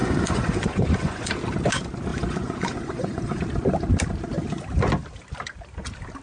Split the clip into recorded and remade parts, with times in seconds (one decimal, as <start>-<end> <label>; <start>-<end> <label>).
0.0-1.3 remade; 1.3-2.1 recorded; 2.1-3.4 remade; 3.4-6.2 recorded